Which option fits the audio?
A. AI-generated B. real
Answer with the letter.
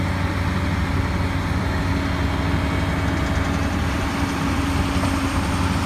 B